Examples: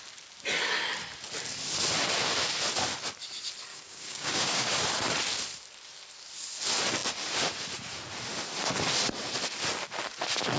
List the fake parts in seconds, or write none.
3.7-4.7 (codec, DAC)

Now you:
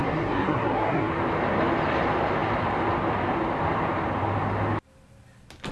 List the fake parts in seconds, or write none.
0.0-1.1 (codec, SNAC)

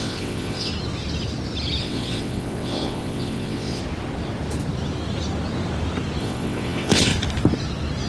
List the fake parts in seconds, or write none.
0.0-0.7 (vocoder, WaveNeXt); 1.8-3.8; 6.2-7.1

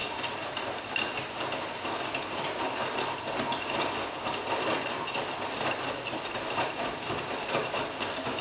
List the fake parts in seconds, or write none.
none

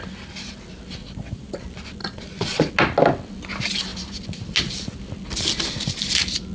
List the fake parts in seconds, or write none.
1.0-1.5 (vocoder, Vocos); 2.0-2.7

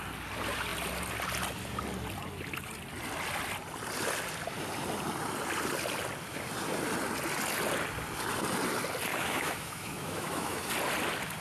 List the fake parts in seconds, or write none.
9.1-10.7 (autoencoder, DAC-VAE)

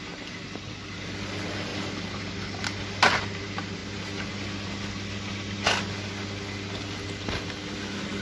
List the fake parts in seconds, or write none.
none

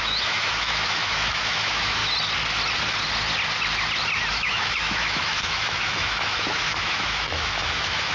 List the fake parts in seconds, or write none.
0.0-2.0 (autoencoder, DAC-VAE); 4.3-8.1